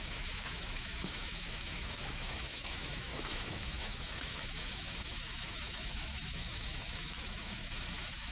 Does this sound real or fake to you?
fake